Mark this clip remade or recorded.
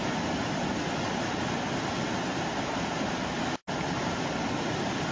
recorded